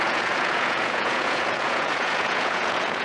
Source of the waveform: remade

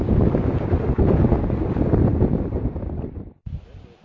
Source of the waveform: recorded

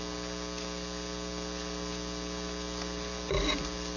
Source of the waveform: recorded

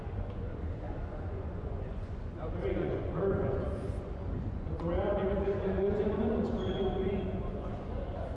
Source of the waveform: remade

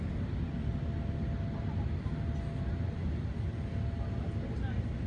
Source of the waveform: recorded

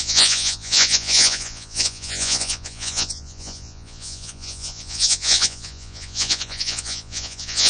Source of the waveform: remade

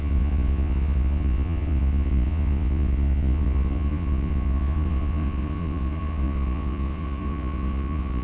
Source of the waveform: remade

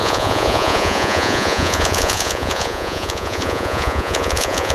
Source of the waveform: remade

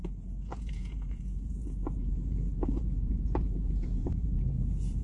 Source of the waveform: remade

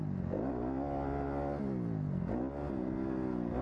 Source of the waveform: recorded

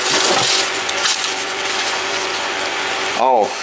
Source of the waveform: remade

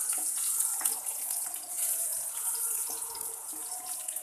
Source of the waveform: remade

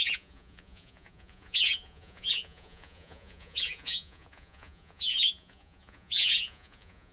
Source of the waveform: remade